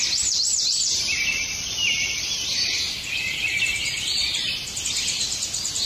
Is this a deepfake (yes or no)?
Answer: no